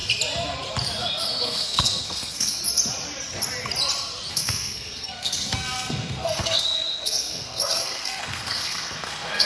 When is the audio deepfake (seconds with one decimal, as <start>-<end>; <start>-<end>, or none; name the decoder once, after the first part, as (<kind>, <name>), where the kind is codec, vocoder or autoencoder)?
1.0-2.6 (codec, SNAC); 4.3-9.5